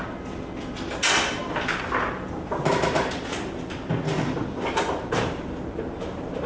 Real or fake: real